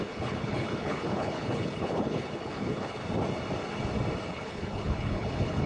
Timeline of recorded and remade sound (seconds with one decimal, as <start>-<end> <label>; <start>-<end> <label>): 0.0-3.0 remade; 3.0-4.3 recorded; 4.3-5.7 remade